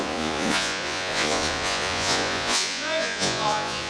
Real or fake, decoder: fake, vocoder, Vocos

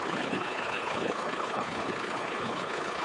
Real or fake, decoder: fake, codec, HILCodec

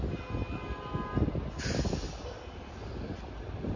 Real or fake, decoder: real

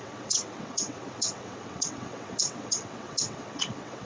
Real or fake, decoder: fake, vocoder, WaveNeXt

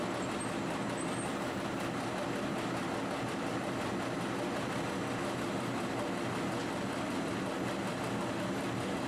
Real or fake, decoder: real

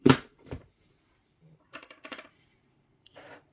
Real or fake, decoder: fake, vocoder, BigVGAN v2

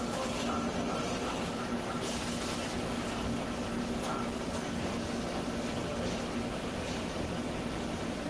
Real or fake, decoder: real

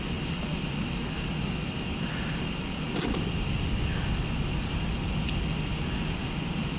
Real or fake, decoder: real